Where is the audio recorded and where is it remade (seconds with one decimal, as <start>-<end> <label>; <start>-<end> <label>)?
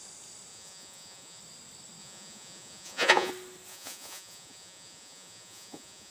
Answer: 0.0-0.5 recorded; 0.5-1.4 remade; 1.4-2.0 recorded; 2.0-3.3 remade; 3.3-3.7 recorded; 3.7-6.1 remade